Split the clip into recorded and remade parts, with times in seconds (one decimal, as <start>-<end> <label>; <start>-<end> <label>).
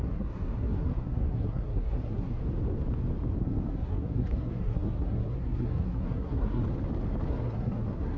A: 0.0-2.3 remade; 2.3-3.4 recorded; 3.4-6.6 remade; 6.6-7.3 recorded; 7.3-8.2 remade